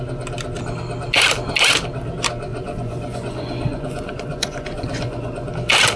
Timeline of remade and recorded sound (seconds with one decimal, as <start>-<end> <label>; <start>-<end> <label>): 0.0-2.5 recorded; 2.5-5.5 remade; 5.5-6.0 recorded